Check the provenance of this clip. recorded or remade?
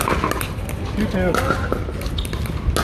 recorded